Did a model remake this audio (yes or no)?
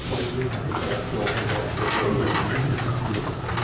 no